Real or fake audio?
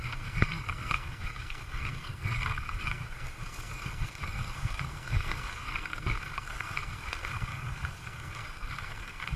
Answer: fake